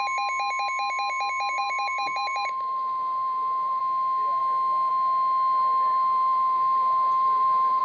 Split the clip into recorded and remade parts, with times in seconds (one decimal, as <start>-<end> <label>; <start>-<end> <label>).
0.0-1.6 recorded; 1.6-3.8 remade; 3.8-5.6 recorded; 5.6-7.8 remade